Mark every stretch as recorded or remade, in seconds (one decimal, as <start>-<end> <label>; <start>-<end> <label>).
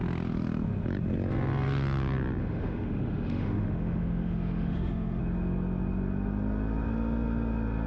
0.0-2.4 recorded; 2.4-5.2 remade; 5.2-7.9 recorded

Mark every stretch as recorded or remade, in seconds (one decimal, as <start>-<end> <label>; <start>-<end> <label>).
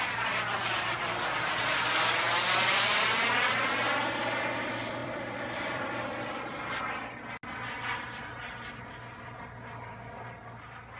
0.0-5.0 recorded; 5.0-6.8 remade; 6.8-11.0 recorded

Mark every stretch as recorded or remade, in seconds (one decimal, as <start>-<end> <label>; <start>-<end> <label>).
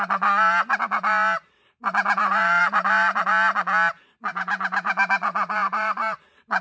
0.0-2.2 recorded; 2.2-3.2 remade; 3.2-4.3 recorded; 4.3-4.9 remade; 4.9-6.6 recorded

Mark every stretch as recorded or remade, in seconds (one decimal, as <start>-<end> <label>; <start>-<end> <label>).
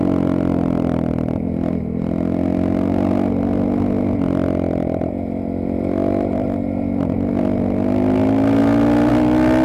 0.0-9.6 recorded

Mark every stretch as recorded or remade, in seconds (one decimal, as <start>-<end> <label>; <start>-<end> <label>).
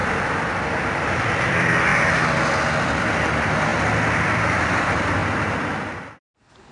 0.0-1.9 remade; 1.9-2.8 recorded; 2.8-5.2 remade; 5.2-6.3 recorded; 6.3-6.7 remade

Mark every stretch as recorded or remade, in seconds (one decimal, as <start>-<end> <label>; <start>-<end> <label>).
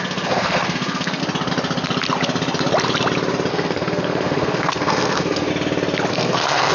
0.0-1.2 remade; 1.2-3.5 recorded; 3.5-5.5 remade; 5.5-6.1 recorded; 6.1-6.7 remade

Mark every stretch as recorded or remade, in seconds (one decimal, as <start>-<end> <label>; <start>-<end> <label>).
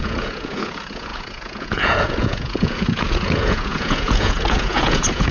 0.0-5.3 remade